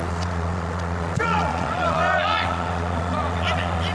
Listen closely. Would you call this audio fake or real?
fake